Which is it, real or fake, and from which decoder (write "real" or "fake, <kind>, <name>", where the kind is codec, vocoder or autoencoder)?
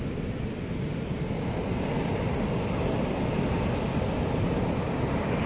real